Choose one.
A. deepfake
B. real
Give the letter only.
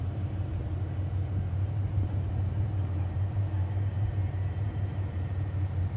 A